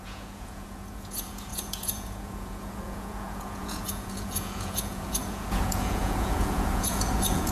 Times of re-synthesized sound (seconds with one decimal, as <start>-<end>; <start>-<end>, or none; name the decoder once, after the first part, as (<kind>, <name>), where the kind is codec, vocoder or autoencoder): 0.0-7.5 (vocoder, Vocos)

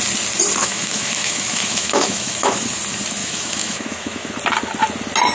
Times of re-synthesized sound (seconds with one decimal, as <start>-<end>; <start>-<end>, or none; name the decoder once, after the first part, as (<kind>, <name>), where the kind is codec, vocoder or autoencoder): 0.6-2.7 (autoencoder, DAC-VAE); 3.2-4.3

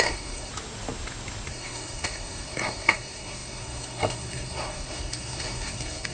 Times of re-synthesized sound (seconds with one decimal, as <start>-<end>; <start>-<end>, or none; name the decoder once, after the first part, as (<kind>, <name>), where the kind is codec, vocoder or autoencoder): 0.0-0.5 (codec, SNAC); 1.5-6.1